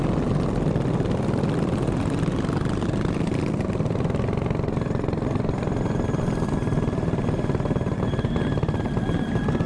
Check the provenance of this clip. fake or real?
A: real